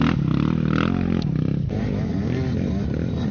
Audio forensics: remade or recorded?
recorded